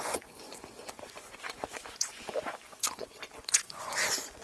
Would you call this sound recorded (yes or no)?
no